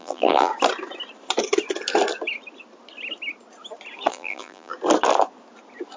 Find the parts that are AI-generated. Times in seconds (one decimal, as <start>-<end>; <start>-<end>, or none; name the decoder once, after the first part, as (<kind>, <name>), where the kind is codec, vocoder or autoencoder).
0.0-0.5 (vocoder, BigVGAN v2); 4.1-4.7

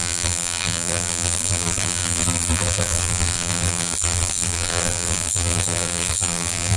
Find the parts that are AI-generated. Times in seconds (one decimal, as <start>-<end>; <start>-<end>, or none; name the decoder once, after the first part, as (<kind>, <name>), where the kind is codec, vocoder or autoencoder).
0.0-6.8 (vocoder, BigVGAN v2)

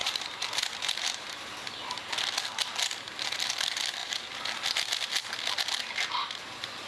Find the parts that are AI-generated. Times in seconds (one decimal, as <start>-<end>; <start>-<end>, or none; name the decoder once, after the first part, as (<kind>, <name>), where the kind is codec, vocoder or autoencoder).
0.0-1.4 (vocoder, BigVGAN v2); 4.0-5.1

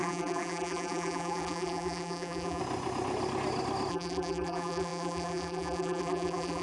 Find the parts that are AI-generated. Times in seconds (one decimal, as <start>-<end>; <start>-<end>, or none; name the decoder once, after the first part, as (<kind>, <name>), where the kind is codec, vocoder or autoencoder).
0.0-2.6 (vocoder, BigVGAN v2); 3.9-6.6

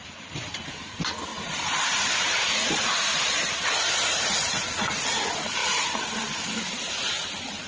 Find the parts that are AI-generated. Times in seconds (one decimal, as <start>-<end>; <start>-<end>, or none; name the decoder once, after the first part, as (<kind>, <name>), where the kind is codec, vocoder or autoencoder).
1.3-4.3 (vocoder, BigVGAN v2)

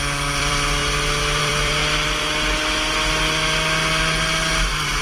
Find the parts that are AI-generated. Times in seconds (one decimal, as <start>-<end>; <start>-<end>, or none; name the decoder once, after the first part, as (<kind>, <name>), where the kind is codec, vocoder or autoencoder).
0.0-0.8 (vocoder, BigVGAN v2); 1.4-1.8